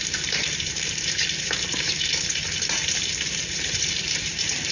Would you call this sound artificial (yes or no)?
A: yes